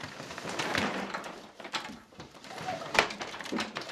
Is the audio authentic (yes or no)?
no